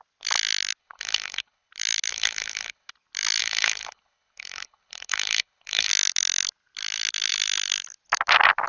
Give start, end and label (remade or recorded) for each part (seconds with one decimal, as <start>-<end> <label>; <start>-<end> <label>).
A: 0.0-0.8 recorded; 0.8-1.7 remade; 1.7-2.1 recorded; 2.1-2.9 remade; 2.9-3.4 recorded; 3.4-5.9 remade; 5.9-8.7 recorded

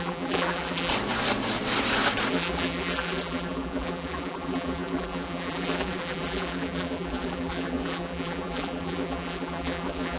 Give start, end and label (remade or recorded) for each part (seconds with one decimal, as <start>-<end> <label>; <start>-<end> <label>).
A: 0.0-0.9 remade; 0.9-2.3 recorded; 2.3-10.2 remade

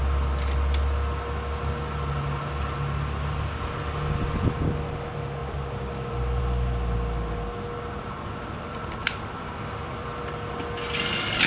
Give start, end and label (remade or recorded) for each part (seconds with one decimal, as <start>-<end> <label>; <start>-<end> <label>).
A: 0.0-5.4 recorded; 5.4-6.4 remade; 6.4-9.0 recorded; 9.0-10.2 remade; 10.2-11.5 recorded

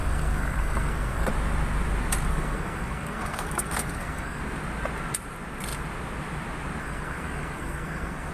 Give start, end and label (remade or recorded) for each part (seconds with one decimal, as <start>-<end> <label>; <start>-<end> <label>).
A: 0.0-1.3 remade; 1.3-2.3 recorded; 2.3-4.4 remade; 4.4-6.8 recorded; 6.8-8.3 remade

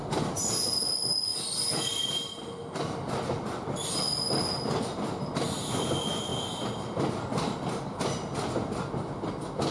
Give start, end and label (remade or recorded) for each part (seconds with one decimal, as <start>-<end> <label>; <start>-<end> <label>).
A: 0.0-9.7 recorded

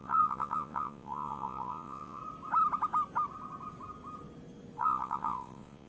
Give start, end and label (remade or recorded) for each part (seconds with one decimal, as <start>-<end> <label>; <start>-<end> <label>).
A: 0.0-2.2 remade; 2.2-4.8 recorded; 4.8-5.9 remade

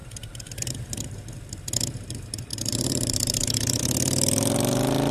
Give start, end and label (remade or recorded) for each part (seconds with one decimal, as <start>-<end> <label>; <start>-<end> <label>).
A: 0.0-1.6 remade; 1.6-2.5 recorded; 2.5-3.8 remade; 3.8-5.1 recorded

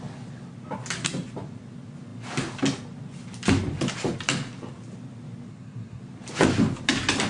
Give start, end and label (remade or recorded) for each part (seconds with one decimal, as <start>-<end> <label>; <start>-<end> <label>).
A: 0.0-5.5 recorded; 5.5-6.0 remade; 6.0-7.3 recorded